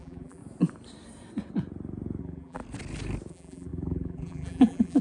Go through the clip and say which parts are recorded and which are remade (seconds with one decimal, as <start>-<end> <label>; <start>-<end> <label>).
0.0-0.4 remade; 0.4-2.2 recorded; 2.2-2.6 remade; 2.6-3.3 recorded; 3.3-5.0 remade

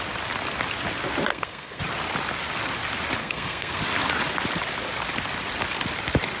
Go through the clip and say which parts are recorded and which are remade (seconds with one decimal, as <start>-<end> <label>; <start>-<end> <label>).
0.0-1.3 recorded; 1.3-1.8 remade; 1.8-3.2 recorded; 3.2-3.8 remade; 3.8-6.4 recorded

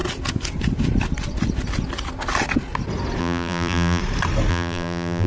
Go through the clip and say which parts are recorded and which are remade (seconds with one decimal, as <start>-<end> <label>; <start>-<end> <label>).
0.0-3.2 recorded; 3.2-4.0 remade; 4.0-4.5 recorded; 4.5-5.3 remade

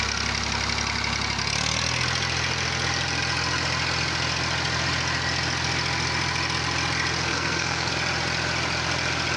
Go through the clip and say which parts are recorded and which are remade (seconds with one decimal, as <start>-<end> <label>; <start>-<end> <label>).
0.0-7.3 recorded; 7.3-7.9 remade; 7.9-9.4 recorded

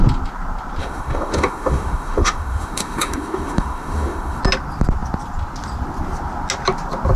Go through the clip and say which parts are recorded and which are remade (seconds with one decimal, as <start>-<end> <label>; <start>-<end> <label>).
0.0-0.8 recorded; 0.8-4.4 remade; 4.4-7.2 recorded

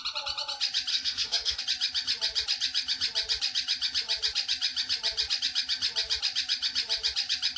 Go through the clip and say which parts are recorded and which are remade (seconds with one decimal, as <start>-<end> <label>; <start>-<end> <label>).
0.0-0.9 recorded; 0.9-1.6 remade; 1.6-7.6 recorded

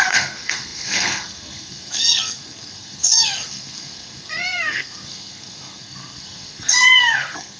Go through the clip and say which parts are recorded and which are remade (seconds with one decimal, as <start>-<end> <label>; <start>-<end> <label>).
0.0-7.6 remade